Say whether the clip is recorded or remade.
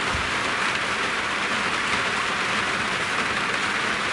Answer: recorded